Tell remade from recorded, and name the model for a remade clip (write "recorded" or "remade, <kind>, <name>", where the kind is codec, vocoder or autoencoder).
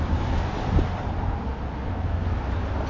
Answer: recorded